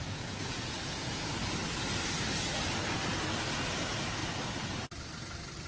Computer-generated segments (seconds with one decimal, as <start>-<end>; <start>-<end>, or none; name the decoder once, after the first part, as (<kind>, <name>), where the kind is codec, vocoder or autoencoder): 0.0-1.2 (vocoder, Vocos)